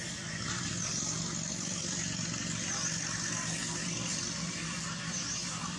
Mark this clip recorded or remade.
recorded